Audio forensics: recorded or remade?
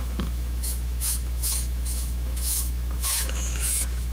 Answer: remade